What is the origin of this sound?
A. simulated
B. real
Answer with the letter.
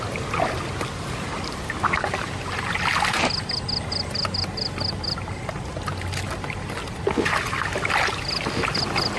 B